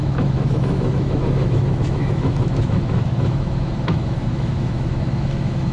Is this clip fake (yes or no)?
yes